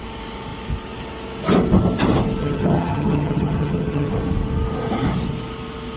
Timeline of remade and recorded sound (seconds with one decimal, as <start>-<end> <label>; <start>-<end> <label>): 0.0-2.4 recorded; 2.4-4.1 remade; 4.1-6.0 recorded